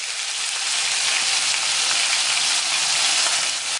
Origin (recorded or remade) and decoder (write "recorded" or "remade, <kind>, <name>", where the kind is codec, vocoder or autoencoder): recorded